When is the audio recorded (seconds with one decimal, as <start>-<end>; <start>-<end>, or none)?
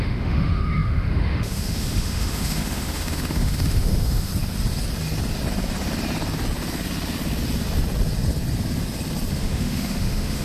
4.3-9.3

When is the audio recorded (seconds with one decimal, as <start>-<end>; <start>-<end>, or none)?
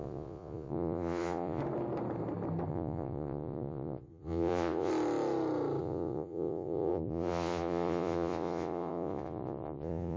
1.6-2.7; 4.9-5.8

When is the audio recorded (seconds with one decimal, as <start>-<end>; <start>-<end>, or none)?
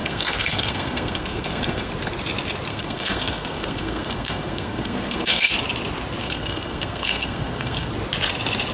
1.9-2.7; 5.5-6.2; 7.9-8.7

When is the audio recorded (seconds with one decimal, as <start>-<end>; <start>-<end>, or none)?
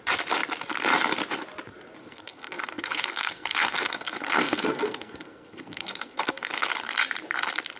0.0-2.0; 6.7-7.8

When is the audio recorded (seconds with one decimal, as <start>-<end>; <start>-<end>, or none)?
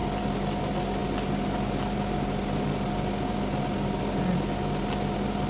0.0-5.5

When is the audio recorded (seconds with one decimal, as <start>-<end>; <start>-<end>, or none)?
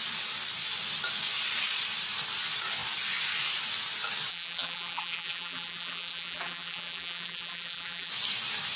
0.0-4.3; 8.1-8.8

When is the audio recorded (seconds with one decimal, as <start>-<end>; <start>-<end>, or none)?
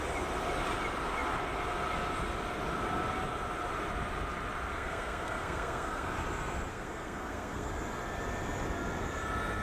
0.0-4.7; 6.1-6.7; 7.7-9.6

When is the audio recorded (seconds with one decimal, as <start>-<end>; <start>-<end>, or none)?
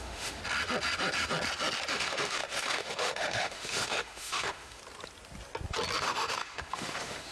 0.4-1.9; 4.8-6.0